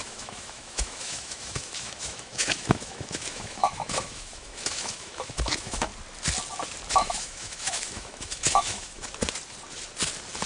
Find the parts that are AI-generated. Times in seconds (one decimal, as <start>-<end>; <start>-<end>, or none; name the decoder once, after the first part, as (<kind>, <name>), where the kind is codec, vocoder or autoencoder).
0.0-5.9 (autoencoder, DAC-VAE); 6.9-9.0